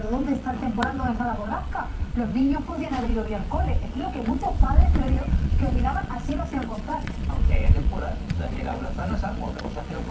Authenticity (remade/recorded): remade